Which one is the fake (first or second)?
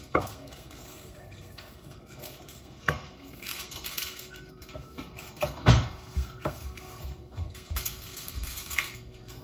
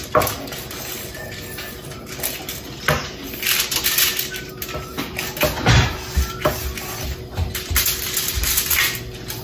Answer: first